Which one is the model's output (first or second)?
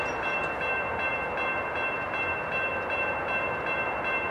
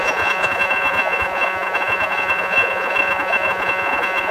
second